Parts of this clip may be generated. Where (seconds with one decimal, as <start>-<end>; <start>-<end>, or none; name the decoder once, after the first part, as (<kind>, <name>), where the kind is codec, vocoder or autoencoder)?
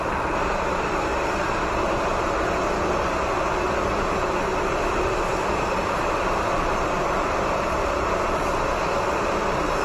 4.5-8.9 (vocoder, BigVGAN v2)